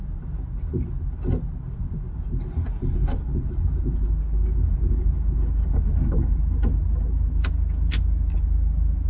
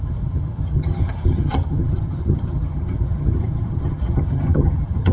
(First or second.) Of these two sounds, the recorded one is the first